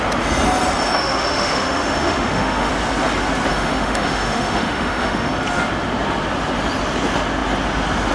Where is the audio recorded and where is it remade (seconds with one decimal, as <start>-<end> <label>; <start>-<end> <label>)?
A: 0.0-1.0 recorded; 1.0-2.7 remade; 2.7-3.5 recorded; 3.5-5.3 remade; 5.3-8.1 recorded